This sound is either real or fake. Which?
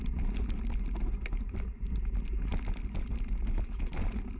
real